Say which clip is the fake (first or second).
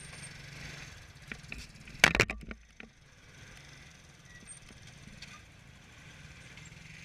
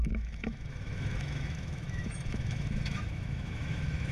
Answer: second